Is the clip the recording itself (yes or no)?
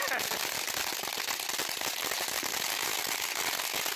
yes